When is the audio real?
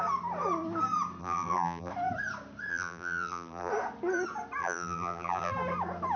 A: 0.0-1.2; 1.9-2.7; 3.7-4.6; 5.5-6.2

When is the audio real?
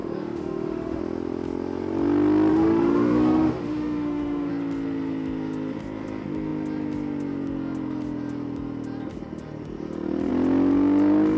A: 1.0-2.5; 4.5-11.4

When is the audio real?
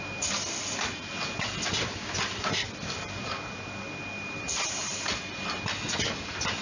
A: 0.0-6.6